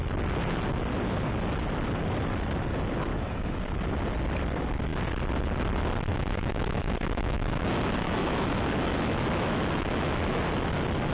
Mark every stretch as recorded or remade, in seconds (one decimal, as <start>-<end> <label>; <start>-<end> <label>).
0.0-3.1 recorded; 3.1-3.6 remade; 3.6-6.1 recorded; 6.1-10.4 remade; 10.4-11.1 recorded